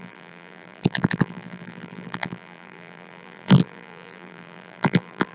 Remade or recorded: remade